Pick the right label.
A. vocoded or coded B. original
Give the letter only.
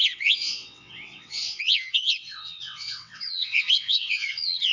A